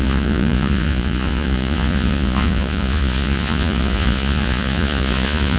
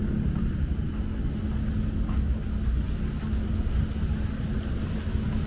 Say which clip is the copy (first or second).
first